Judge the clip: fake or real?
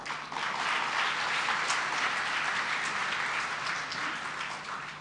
real